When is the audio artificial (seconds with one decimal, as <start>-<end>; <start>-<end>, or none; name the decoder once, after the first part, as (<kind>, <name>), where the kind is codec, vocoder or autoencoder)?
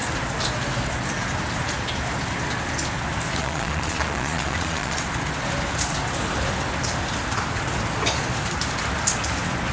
3.4-5.0 (vocoder, Vocos)